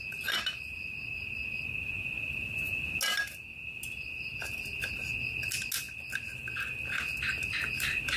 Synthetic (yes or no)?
no